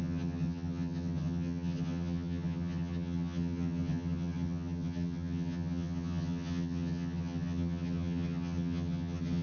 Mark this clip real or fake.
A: fake